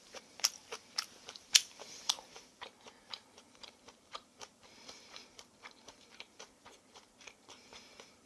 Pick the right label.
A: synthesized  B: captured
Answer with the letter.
A